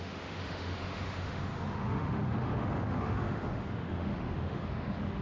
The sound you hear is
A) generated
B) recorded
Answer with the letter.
A